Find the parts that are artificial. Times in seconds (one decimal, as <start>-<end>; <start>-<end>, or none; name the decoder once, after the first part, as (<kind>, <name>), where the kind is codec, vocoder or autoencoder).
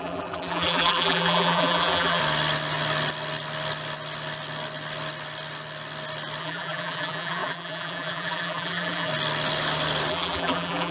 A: 0.0-2.2 (vocoder, BigVGAN v2); 6.4-9.1; 10.1-10.9